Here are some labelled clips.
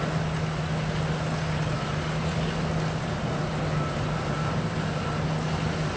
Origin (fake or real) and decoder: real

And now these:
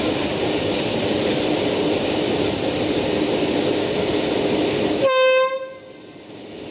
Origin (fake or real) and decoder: real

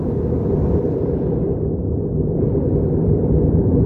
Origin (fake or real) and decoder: real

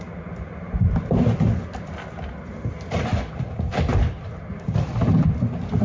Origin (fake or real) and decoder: fake, vocoder, BigVGAN v2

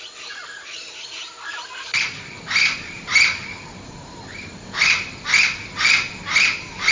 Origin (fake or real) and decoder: fake, vocoder, BigVGAN v2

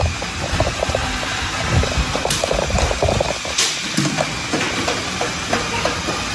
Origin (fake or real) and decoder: real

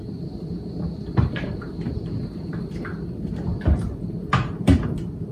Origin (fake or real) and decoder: fake, vocoder, BigVGAN v2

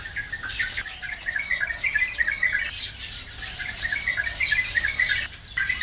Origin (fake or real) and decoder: real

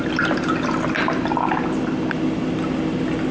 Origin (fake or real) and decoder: real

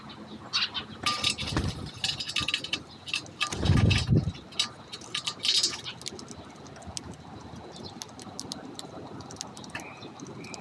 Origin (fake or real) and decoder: real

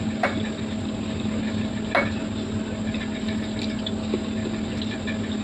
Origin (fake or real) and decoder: real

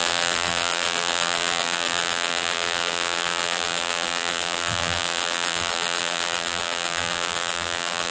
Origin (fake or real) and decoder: fake, vocoder, BigVGAN v2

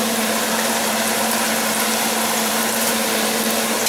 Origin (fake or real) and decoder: fake, vocoder, BigVGAN v2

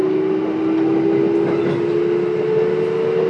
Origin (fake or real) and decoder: real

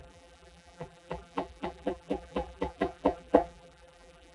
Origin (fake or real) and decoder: fake, vocoder, BigVGAN v2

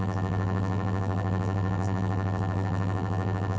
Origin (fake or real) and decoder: fake, vocoder, BigVGAN v2